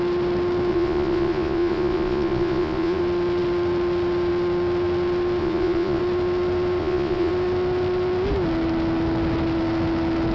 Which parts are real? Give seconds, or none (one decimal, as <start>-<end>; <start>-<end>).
0.0-0.7; 3.0-5.4; 6.0-6.8; 7.3-10.3